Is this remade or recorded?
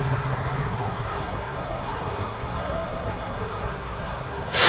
remade